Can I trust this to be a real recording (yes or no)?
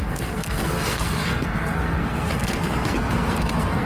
no